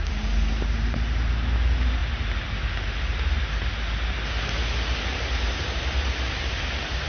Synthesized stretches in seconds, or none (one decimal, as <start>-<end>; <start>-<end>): none

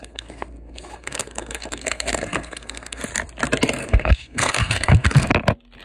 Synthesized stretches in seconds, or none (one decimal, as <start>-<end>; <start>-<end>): 0.0-3.0; 3.8-5.3

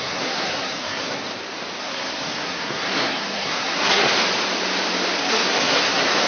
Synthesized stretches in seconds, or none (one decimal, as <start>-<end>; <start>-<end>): 0.0-1.2; 1.8-4.0; 5.3-6.3

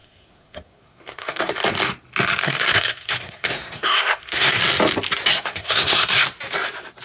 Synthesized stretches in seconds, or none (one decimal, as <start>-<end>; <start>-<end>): 0.0-1.5; 2.4-4.6; 5.3-6.2

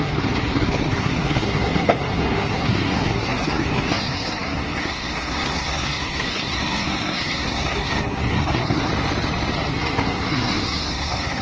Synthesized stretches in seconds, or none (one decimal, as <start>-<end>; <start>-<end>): 0.0-8.9; 9.7-11.4

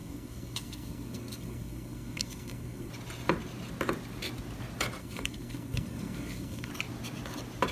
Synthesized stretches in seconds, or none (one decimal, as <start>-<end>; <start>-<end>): 0.0-2.9; 5.0-6.7